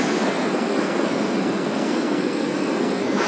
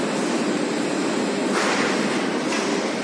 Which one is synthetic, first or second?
first